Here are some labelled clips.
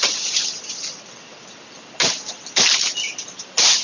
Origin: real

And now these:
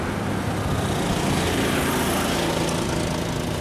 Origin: real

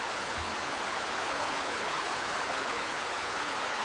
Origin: fake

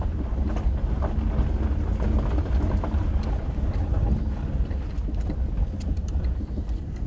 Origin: real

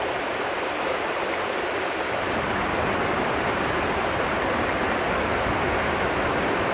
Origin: real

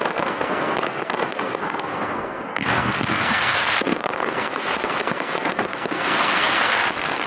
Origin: fake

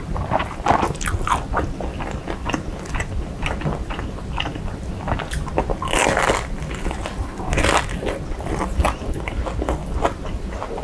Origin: real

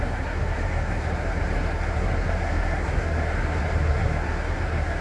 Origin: fake